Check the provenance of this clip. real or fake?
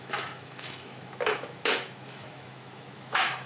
fake